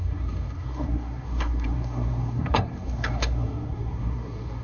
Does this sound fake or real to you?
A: fake